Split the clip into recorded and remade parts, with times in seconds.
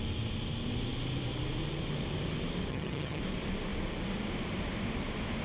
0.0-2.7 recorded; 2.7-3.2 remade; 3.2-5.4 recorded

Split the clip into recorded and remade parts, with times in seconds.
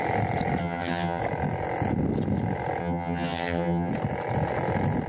0.0-0.6 recorded; 0.6-1.2 remade; 1.2-2.8 recorded; 2.8-3.9 remade; 3.9-5.1 recorded